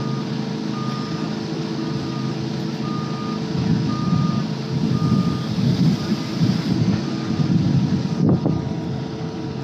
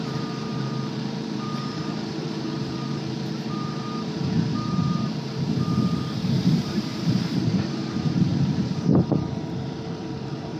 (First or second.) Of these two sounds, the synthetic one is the second